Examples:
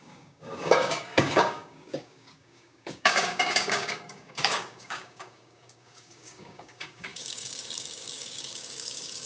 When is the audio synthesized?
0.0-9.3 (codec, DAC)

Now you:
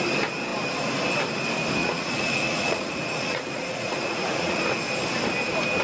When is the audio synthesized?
1.8-4.6 (vocoder, Vocos)

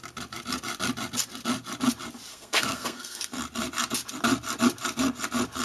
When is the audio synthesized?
2.3-3.3 (codec, SNAC)

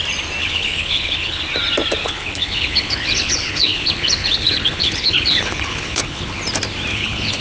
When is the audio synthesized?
0.4-1.4 (codec, HILCodec); 2.0-6.4; 6.9-7.4

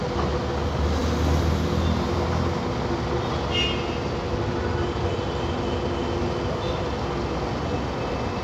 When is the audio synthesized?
none

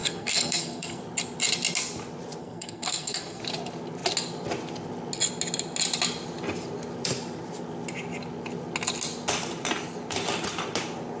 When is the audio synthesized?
0.0-1.0 (codec, SNAC); 2.4-3.4

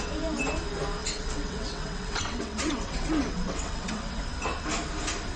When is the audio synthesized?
1.0-4.2 (vocoder, WaveNeXt)